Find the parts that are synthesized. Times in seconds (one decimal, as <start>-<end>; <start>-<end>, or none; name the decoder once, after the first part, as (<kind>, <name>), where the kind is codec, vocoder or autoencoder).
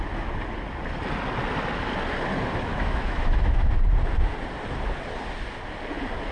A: 2.7-3.7 (autoencoder, DAC-VAE)